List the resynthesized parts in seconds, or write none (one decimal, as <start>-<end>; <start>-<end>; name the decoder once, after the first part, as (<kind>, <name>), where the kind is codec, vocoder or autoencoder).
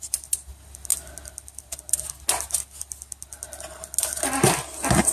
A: none